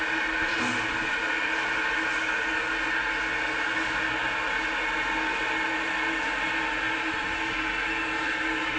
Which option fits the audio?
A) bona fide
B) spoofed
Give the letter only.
A